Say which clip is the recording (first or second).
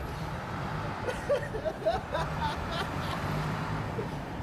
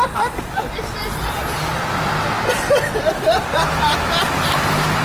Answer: second